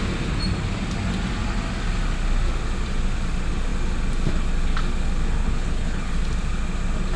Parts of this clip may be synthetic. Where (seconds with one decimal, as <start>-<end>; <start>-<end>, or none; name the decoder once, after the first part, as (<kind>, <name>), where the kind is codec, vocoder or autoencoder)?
5.4-6.1 (codec, HILCodec)